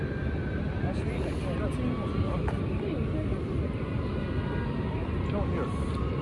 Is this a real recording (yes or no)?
yes